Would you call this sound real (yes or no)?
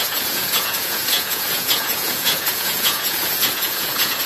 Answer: no